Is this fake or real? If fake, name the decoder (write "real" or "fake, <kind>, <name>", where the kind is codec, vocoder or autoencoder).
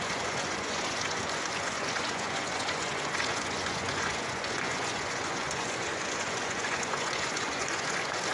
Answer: fake, vocoder, Vocos